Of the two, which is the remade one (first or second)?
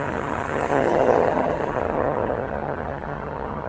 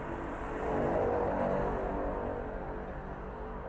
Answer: first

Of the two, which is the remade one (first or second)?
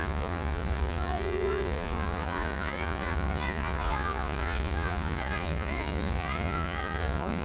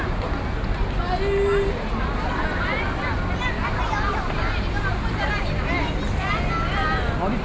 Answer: first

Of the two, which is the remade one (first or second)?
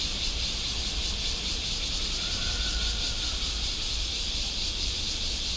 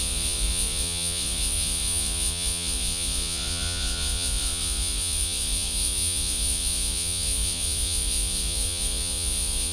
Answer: second